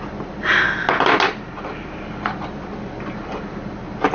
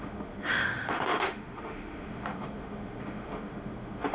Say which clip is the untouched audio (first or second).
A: first